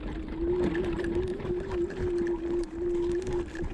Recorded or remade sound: recorded